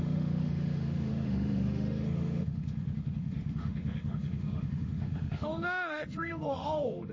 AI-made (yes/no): yes